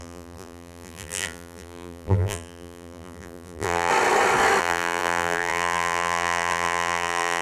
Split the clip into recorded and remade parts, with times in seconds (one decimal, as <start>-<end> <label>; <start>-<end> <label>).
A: 0.0-3.9 remade; 3.9-4.6 recorded; 4.6-7.4 remade